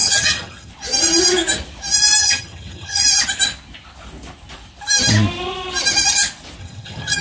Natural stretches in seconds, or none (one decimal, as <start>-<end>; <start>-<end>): 0.7-2.2; 3.0-6.6